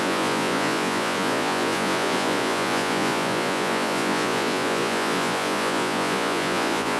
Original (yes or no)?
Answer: no